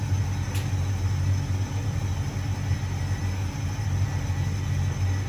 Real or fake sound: real